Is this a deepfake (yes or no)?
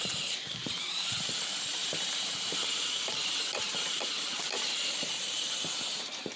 yes